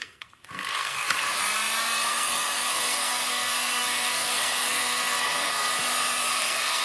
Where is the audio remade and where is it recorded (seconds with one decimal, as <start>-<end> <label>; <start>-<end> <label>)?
0.0-1.4 remade; 1.4-2.1 recorded; 2.1-5.7 remade; 5.7-6.3 recorded; 6.3-6.8 remade